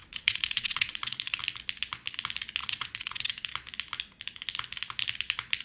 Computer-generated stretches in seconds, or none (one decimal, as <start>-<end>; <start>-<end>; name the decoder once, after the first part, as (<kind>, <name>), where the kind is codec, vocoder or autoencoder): 0.0-1.4 (vocoder, WaveNeXt); 2.6-3.5